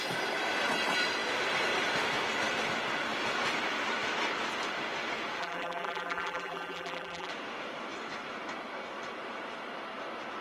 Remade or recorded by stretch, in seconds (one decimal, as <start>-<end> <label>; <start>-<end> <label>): 0.0-5.4 recorded; 5.4-7.3 remade; 7.3-10.4 recorded